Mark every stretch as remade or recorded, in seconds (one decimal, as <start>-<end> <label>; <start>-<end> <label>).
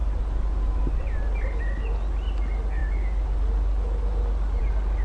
0.0-5.0 recorded